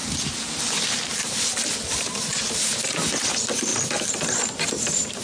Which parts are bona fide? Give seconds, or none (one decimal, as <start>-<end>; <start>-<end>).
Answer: 0.0-0.6; 2.3-3.2